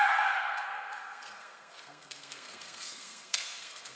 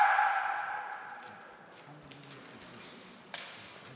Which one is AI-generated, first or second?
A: first